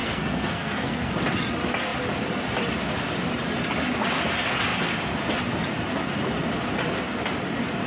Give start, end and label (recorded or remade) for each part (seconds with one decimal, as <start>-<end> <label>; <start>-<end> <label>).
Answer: 0.0-1.1 remade; 1.1-7.9 recorded